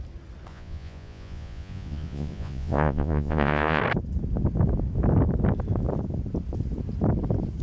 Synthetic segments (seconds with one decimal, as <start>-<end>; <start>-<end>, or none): 0.5-3.8